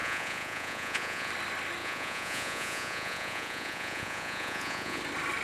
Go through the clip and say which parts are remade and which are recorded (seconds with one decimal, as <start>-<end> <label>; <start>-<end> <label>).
0.0-1.3 remade; 1.3-1.8 recorded; 1.8-5.0 remade; 5.0-5.4 recorded